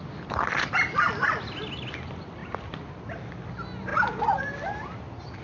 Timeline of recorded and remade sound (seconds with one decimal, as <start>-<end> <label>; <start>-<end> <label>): 0.0-5.4 recorded